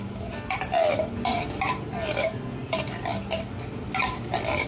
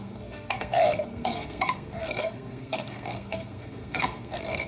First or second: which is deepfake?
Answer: second